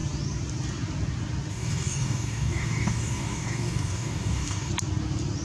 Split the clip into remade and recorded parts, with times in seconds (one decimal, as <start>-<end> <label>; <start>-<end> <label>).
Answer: 0.0-1.5 recorded; 1.5-4.7 remade; 4.7-5.4 recorded